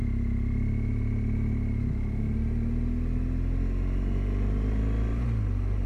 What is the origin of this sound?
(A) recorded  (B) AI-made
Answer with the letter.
A